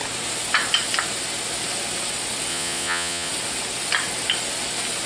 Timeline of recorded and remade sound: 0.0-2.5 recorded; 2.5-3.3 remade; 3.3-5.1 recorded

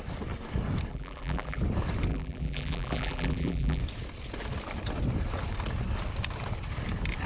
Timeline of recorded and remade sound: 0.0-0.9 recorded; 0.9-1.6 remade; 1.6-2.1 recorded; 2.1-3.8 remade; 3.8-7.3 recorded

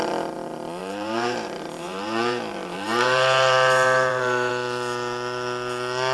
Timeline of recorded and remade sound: 0.0-0.8 recorded; 0.8-4.5 remade; 4.5-6.1 recorded